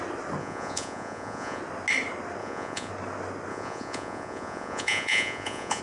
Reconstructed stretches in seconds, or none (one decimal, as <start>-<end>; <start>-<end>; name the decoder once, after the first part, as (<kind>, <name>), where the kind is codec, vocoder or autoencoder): 0.4-1.6 (vocoder, Vocos); 2.4-2.9; 3.5-5.8